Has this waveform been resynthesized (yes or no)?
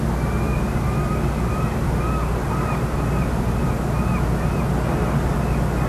no